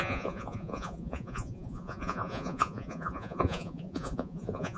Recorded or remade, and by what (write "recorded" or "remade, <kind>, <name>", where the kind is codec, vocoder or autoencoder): remade, vocoder, Vocos